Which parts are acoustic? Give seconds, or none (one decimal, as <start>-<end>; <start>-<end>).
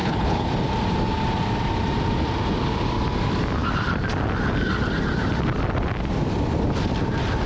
0.5-7.5